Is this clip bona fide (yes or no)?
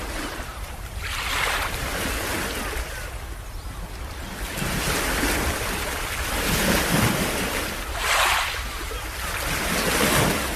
yes